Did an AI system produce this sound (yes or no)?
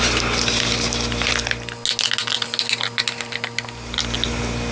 no